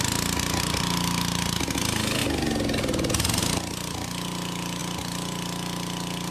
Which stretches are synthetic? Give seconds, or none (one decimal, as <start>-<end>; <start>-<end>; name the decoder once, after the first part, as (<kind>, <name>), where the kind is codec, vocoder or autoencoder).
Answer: none